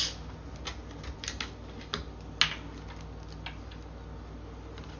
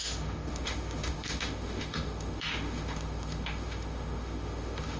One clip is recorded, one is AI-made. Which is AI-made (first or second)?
second